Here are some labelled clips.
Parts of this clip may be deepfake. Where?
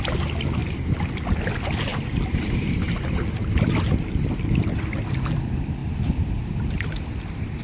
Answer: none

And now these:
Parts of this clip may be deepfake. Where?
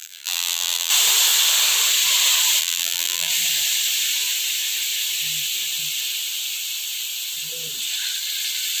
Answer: 0.0-0.9 (vocoder, BigVGAN v2); 2.6-3.3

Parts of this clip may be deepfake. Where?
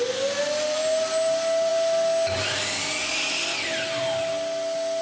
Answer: none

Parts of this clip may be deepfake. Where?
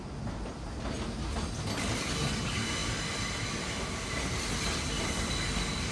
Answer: none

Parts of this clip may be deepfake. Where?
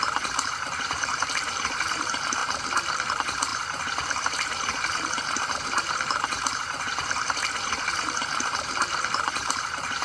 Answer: 0.0-2.4 (vocoder, BigVGAN v2); 3.1-10.0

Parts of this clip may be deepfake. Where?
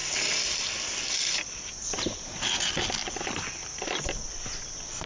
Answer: 0.0-1.7 (vocoder, BigVGAN v2); 3.0-4.5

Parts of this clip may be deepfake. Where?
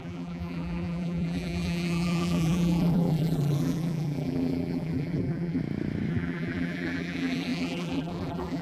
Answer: 0.0-5.6 (vocoder, BigVGAN v2); 6.1-8.6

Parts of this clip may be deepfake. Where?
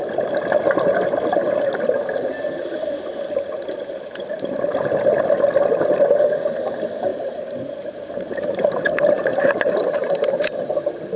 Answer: 7.1-10.7 (vocoder, BigVGAN v2)